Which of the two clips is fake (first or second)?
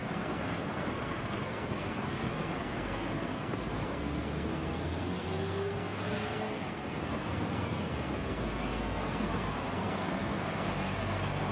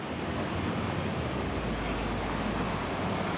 first